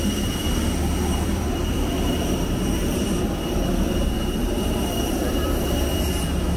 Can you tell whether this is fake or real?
fake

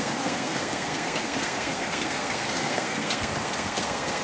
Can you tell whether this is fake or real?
fake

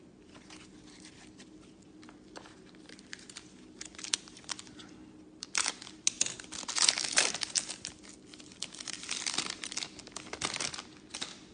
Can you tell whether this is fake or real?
real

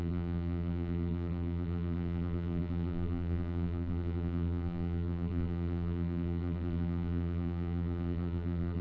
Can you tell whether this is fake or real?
fake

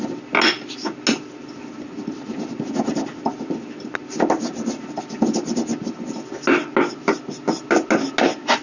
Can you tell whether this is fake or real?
real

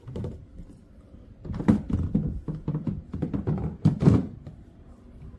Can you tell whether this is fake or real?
fake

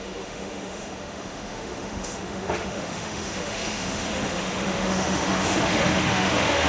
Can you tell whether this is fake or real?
fake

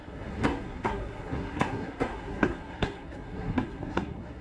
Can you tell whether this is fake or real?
fake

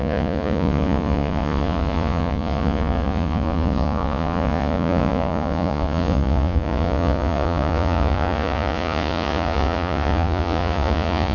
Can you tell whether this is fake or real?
fake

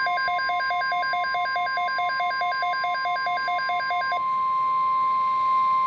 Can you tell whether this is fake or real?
real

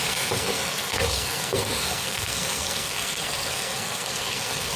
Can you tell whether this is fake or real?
fake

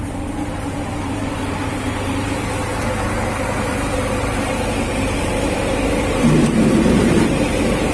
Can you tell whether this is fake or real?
fake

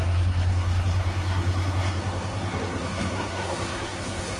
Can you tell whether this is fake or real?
fake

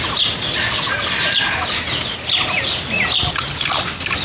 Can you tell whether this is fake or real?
real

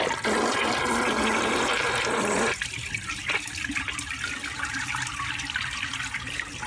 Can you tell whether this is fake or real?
real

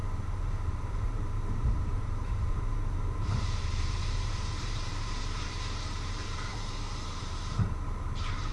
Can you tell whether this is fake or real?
fake